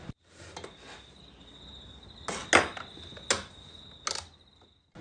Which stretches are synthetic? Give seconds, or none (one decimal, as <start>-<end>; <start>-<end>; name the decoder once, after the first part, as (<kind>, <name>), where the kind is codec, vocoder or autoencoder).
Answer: none